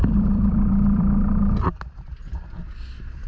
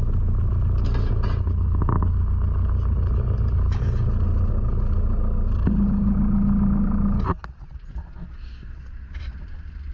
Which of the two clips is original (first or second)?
second